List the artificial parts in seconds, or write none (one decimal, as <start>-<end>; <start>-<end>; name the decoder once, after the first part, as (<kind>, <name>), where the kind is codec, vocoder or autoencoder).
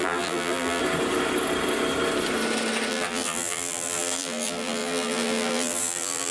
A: 0.0-0.8 (vocoder, BigVGAN v2); 2.9-6.3